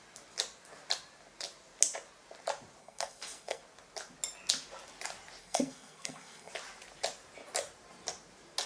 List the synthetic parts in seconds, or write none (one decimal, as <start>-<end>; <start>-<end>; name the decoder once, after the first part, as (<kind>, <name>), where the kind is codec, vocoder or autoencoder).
2.8-3.6 (codec, SNAC); 5.4-6.5